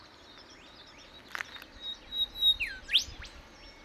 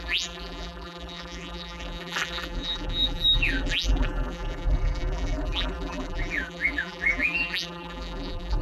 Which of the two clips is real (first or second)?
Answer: first